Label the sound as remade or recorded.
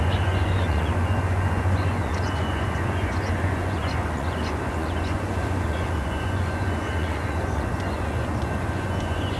remade